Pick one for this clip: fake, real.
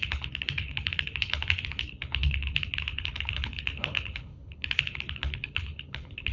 fake